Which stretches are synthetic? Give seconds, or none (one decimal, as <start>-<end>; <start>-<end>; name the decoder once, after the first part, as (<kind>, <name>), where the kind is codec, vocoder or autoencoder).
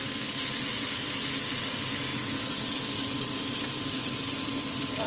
none